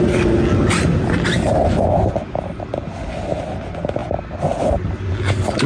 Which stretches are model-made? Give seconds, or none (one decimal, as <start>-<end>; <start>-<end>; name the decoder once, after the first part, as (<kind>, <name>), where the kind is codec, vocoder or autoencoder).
none